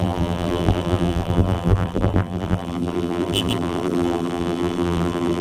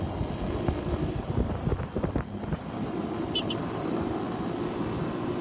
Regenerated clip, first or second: first